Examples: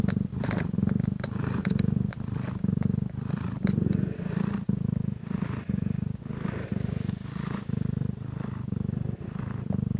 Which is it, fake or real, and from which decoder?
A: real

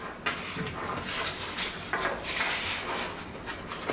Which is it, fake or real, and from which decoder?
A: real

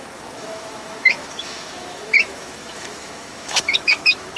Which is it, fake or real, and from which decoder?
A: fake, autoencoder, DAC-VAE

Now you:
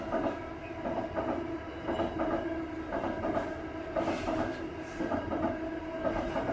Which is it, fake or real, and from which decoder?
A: real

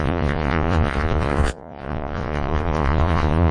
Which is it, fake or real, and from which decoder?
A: fake, vocoder, Vocos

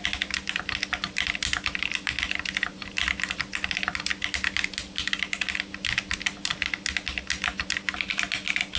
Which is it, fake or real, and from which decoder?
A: real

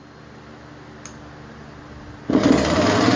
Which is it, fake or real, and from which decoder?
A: real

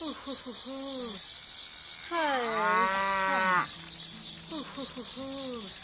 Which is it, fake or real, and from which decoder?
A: real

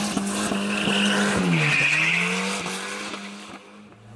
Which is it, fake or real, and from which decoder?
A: real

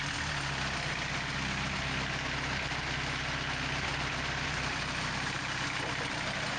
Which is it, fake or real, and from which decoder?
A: real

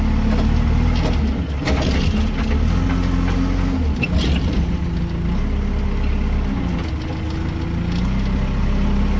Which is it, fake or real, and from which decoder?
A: real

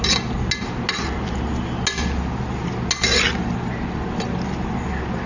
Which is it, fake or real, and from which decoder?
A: real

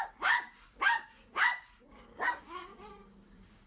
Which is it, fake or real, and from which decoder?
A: fake, codec, DAC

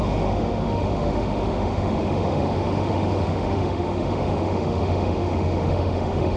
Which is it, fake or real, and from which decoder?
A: fake, autoencoder, DAC-VAE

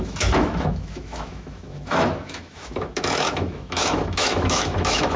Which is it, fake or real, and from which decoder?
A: fake, autoencoder, DAC-VAE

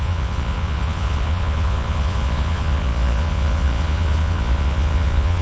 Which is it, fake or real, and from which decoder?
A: fake, vocoder, Vocos